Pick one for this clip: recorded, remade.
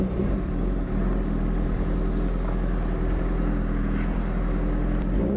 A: recorded